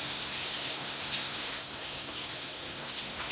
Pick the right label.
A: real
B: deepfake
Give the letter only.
B